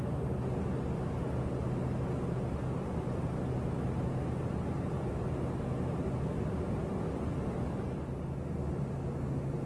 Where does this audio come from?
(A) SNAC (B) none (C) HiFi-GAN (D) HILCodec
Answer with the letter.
B